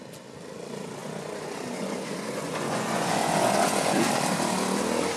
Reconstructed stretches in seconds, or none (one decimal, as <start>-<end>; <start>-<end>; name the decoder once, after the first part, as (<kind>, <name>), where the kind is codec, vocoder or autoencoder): 1.0-4.1 (vocoder, Vocos)